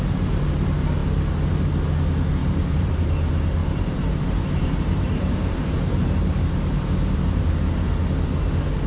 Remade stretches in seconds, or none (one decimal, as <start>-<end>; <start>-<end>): 2.4-2.9; 3.6-7.5